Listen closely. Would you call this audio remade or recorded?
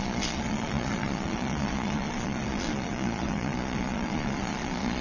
remade